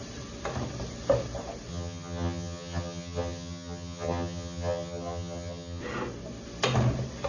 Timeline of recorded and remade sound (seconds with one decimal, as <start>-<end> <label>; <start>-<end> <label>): 0.0-1.7 recorded; 1.7-5.8 remade; 5.8-7.3 recorded